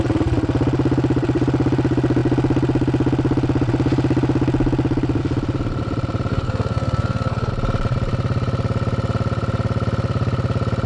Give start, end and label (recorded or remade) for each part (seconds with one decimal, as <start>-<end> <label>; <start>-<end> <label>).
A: 0.0-6.3 recorded; 6.3-7.5 remade; 7.5-10.9 recorded